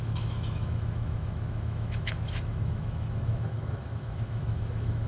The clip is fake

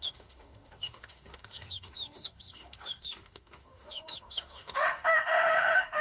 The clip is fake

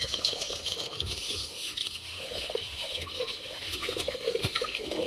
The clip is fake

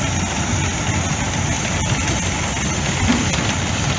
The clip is real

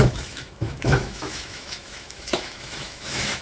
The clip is fake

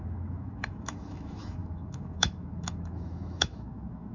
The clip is fake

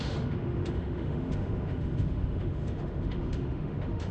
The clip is fake